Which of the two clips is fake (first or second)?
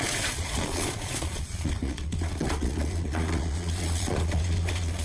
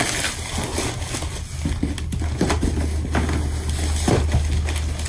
first